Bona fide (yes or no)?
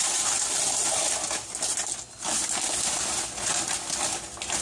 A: yes